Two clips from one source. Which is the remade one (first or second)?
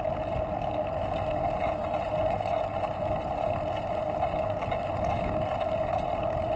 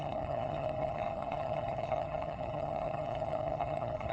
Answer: second